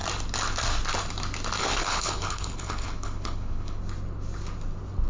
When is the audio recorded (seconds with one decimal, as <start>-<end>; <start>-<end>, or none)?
0.0-1.6; 3.8-5.1